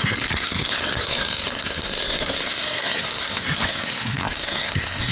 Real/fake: fake